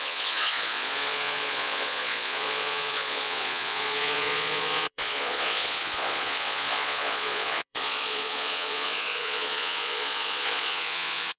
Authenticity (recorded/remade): remade